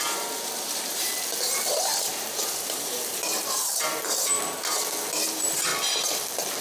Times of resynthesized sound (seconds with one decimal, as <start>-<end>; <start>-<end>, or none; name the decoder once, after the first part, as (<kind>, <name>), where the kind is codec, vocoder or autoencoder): 0.0-1.1 (vocoder, BigVGAN v2); 1.7-5.7